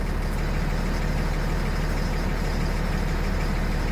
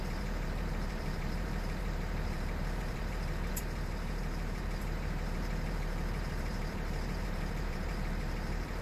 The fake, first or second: second